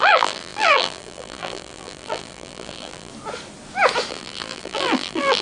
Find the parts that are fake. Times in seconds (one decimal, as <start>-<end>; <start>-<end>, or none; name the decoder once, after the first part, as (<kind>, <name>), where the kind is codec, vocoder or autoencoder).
0.0-3.1 (vocoder, BigVGAN v2); 4.1-5.4